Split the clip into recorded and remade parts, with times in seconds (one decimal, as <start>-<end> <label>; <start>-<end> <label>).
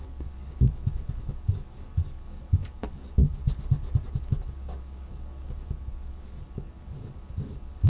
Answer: 0.0-3.4 remade; 3.4-4.2 recorded; 4.2-7.9 remade